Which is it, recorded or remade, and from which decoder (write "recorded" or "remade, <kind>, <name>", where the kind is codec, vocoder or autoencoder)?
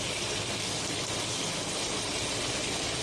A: recorded